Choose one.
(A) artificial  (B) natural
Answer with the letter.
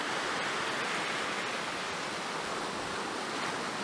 B